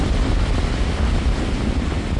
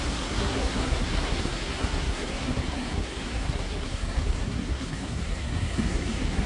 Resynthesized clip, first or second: second